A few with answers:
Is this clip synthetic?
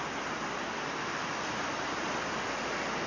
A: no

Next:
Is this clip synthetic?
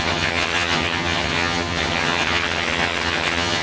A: yes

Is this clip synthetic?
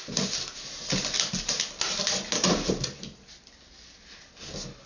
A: no